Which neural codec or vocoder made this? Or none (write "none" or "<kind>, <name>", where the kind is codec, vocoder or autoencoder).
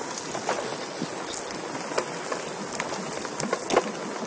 none